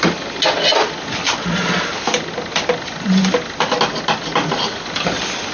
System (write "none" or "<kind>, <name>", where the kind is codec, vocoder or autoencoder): none